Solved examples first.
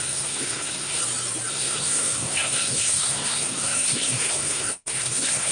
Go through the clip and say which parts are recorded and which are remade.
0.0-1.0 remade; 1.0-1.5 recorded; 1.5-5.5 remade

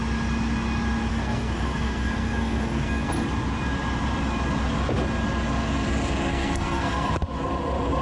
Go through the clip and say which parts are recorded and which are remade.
0.0-1.1 recorded; 1.1-3.1 remade; 3.1-6.3 recorded; 6.3-7.1 remade; 7.1-8.0 recorded

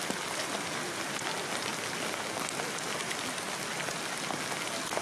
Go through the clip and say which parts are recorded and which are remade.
0.0-5.0 recorded